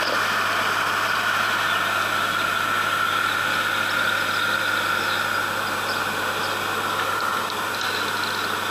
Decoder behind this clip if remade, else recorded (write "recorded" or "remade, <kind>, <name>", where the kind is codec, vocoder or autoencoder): recorded